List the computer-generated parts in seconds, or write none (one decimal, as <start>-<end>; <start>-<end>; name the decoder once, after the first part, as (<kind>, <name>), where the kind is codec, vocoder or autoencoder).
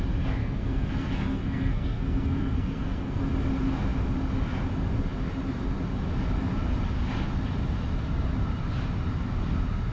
0.4-3.2 (codec, SNAC)